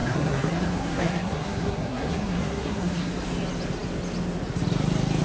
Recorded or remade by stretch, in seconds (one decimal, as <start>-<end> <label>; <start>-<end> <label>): 0.0-3.1 remade; 3.1-5.2 recorded